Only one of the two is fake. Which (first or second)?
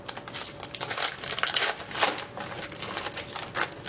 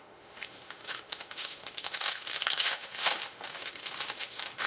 second